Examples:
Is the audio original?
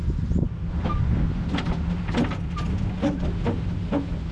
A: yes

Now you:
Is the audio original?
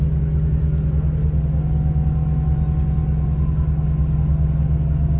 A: yes